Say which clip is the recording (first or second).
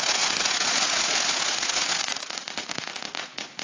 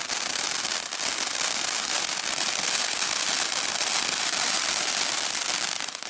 second